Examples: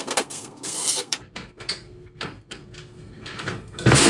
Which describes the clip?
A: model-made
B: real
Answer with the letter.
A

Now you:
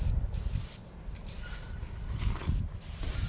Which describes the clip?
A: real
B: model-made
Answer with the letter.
A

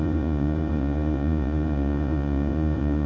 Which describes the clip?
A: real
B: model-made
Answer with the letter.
B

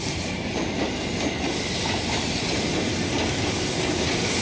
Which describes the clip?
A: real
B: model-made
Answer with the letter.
A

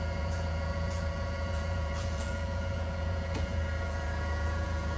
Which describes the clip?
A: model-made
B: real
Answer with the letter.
A